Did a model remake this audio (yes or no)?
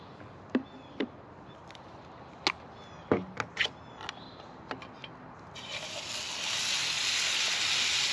no